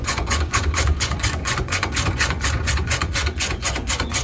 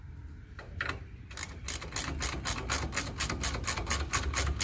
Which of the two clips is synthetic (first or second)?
first